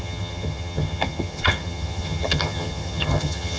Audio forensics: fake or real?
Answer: fake